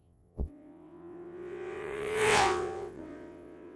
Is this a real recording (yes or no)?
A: no